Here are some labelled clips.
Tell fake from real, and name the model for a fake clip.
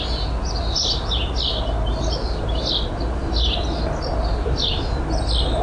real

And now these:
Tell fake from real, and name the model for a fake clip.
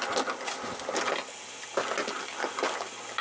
real